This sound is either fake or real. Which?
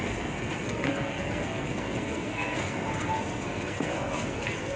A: fake